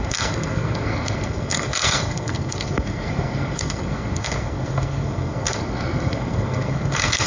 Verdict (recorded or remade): remade